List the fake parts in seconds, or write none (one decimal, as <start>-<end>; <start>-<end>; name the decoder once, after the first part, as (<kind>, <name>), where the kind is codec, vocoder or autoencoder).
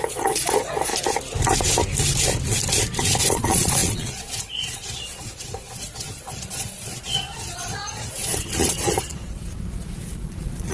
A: 0.0-0.9 (vocoder, Vocos); 3.2-10.7